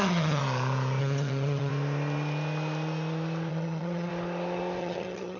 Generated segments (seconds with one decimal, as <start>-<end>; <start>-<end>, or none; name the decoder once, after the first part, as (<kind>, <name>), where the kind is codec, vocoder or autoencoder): 0.0-0.4 (vocoder, HiFi-GAN); 1.0-1.7; 3.5-4.1; 4.8-5.4